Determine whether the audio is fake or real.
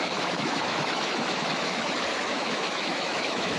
fake